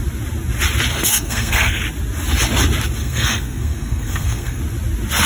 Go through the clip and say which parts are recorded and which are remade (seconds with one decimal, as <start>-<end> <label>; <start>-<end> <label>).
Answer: 0.0-0.9 recorded; 0.9-1.8 remade; 1.8-3.0 recorded; 3.0-4.6 remade; 4.6-5.3 recorded